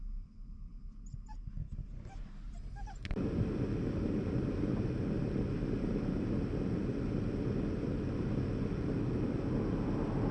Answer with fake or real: real